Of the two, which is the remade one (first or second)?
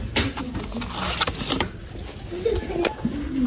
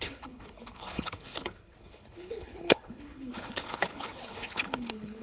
second